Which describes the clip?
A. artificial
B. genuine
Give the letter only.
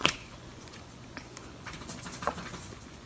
A